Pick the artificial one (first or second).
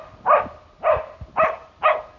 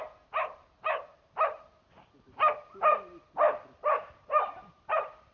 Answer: second